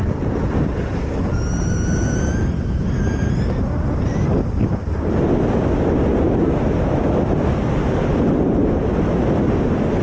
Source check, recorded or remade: recorded